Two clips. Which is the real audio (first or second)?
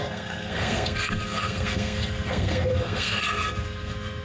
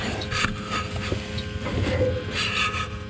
second